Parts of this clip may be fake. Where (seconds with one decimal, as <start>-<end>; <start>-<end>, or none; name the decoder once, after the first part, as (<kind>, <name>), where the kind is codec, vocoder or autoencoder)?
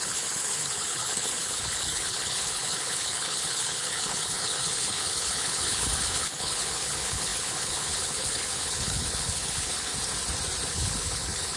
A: 0.0-9.9 (codec, HILCodec); 10.7-11.6